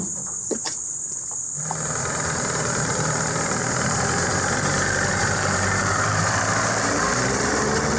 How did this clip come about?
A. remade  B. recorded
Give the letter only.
A